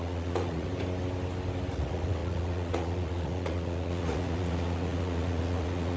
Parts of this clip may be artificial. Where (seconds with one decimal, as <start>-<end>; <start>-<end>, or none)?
0.0-0.7; 1.7-6.0